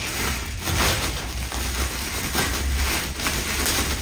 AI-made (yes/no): no